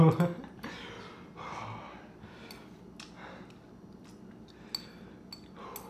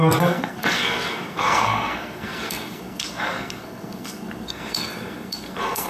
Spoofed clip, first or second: second